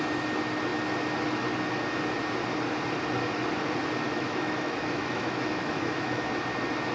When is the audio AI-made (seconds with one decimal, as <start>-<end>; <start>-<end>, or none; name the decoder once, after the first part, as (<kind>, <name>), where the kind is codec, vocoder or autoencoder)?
4.1-6.3 (autoencoder, DAC-VAE)